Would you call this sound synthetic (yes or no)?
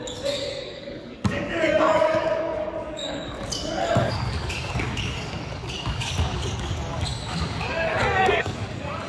yes